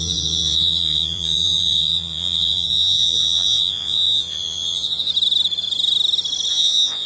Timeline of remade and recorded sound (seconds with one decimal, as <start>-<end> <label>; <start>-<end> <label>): 0.0-5.1 remade; 5.1-6.5 recorded; 6.5-7.1 remade